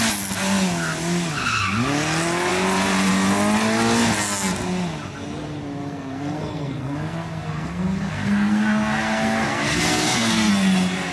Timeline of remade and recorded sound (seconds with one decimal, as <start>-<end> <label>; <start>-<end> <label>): 0.0-5.8 recorded; 5.8-10.5 remade; 10.5-11.1 recorded